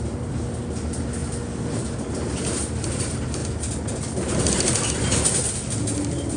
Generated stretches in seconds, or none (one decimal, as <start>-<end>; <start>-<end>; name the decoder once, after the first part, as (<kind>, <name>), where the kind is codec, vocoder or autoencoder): none